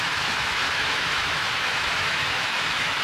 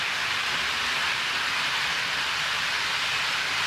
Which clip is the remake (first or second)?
first